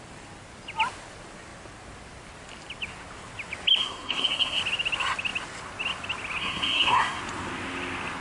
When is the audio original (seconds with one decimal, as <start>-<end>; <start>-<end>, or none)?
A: 0.0-3.8; 4.6-6.4; 7.2-8.2